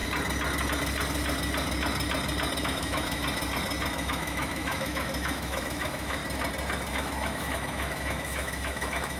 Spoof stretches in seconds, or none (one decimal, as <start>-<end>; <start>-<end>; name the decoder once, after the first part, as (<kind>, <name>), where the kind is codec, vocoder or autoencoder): 2.6-3.2 (autoencoder, DAC-VAE); 3.9-6.2; 6.9-9.2